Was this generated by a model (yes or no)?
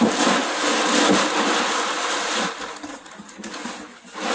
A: no